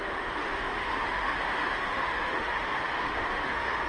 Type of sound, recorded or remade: remade